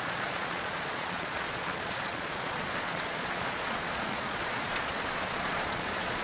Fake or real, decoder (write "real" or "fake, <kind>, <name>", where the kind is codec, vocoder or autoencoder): fake, vocoder, Vocos